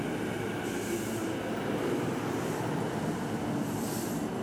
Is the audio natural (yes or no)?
yes